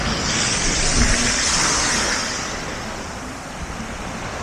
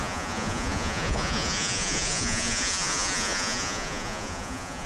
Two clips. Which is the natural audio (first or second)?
first